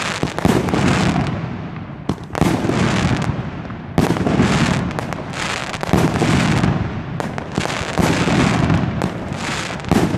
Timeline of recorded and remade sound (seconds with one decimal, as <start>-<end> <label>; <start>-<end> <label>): 0.0-10.2 recorded